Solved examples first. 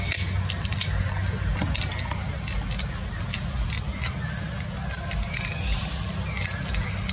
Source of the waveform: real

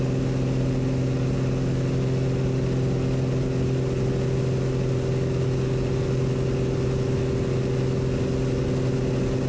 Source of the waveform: real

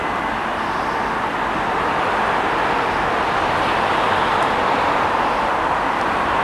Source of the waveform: real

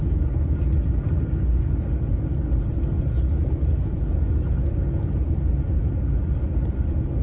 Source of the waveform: real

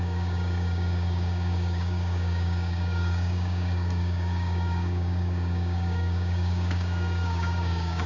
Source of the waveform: fake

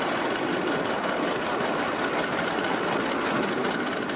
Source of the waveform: real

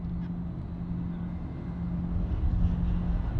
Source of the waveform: real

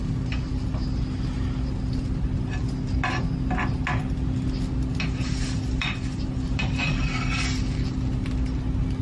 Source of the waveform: real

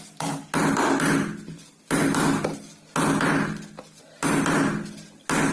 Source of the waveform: real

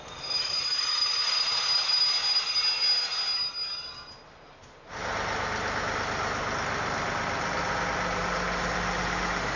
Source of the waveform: real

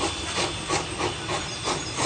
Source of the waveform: fake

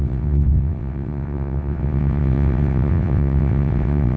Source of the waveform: fake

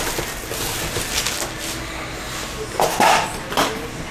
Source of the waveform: real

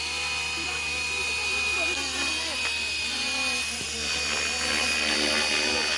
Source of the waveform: real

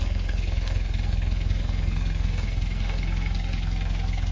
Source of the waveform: fake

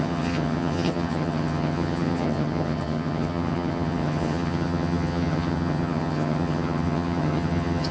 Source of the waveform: fake